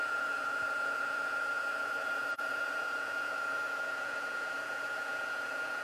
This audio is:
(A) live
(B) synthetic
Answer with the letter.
B